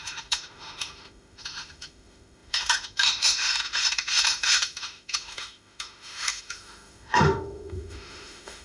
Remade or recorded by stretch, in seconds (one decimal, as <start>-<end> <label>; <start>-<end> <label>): 0.0-8.6 remade